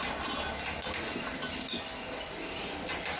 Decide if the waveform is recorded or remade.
recorded